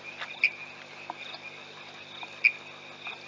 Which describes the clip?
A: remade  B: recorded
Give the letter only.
B